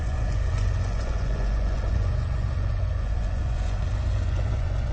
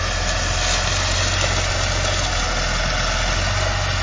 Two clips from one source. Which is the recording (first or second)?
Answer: second